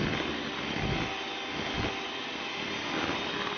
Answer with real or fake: real